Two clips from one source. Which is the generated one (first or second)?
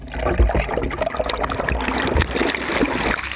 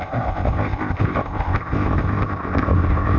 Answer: second